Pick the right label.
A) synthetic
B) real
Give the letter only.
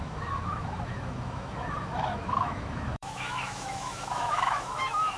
A